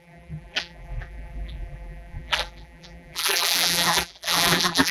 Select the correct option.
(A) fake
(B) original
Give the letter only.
A